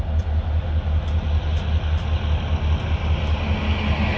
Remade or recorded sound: recorded